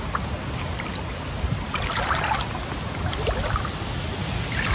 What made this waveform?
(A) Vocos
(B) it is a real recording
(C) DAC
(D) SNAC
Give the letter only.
B